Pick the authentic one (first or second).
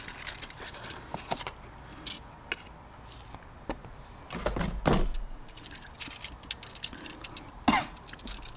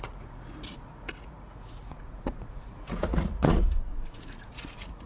first